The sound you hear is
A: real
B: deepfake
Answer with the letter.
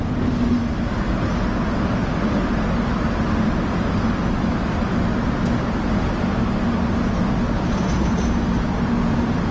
A